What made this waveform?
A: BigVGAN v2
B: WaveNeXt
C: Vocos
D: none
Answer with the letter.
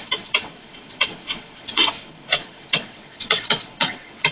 B